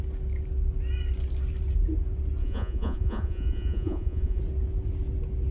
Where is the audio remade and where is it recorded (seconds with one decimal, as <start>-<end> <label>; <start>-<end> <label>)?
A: 0.0-2.4 recorded; 2.4-4.4 remade; 4.4-5.5 recorded